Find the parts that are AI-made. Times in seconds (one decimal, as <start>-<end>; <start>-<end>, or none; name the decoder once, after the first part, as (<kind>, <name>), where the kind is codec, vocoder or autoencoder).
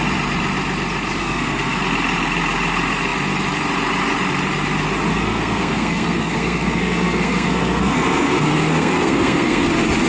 1.2-1.8 (codec, SNAC); 5.1-9.7